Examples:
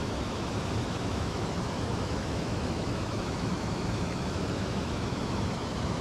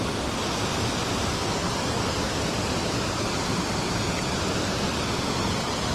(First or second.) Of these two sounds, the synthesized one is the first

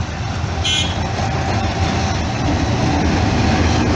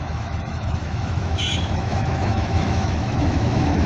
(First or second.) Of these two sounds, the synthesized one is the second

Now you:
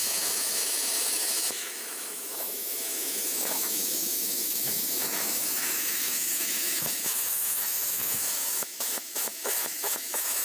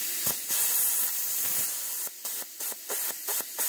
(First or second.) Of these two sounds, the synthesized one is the first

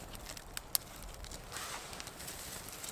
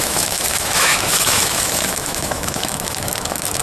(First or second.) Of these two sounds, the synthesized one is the second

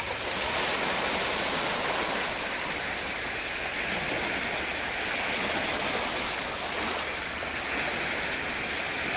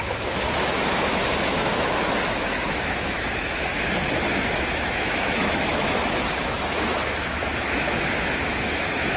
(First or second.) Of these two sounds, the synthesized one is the second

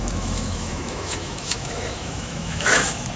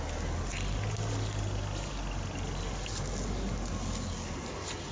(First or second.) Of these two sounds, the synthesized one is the first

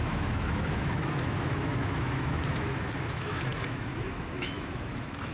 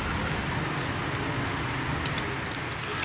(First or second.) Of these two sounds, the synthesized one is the first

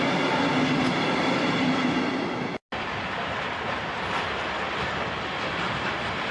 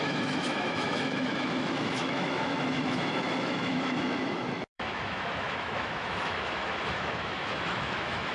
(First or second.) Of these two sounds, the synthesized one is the second